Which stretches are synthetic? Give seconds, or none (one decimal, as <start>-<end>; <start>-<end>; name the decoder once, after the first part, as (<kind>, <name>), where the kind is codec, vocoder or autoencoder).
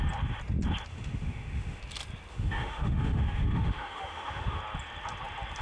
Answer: 0.9-1.8 (autoencoder, DAC-VAE); 2.3-4.6